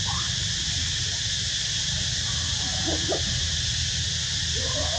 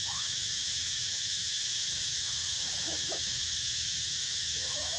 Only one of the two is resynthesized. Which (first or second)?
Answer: second